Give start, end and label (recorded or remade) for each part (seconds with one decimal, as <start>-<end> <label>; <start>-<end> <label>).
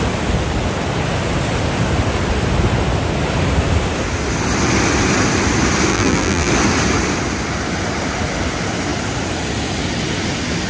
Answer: 0.0-5.9 recorded; 5.9-6.5 remade; 6.5-10.7 recorded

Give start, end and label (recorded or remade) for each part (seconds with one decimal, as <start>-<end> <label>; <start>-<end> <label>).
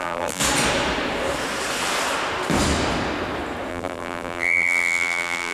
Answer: 0.0-0.4 remade; 0.4-3.7 recorded; 3.7-5.5 remade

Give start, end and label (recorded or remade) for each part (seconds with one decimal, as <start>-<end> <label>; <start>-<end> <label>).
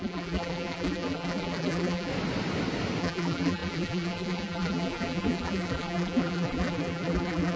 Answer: 0.0-2.1 remade; 2.1-3.0 recorded; 3.0-7.6 remade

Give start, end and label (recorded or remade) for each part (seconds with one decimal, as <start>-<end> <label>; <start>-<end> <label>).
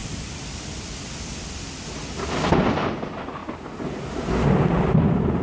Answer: 0.0-2.7 recorded; 2.7-3.4 remade; 3.4-4.5 recorded; 4.5-5.4 remade